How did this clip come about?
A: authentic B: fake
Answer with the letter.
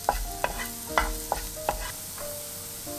A